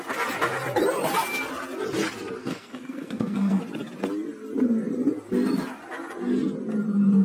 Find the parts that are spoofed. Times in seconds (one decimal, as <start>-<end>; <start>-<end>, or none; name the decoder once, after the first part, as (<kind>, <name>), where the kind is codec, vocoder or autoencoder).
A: 2.4-3.6 (codec, SNAC)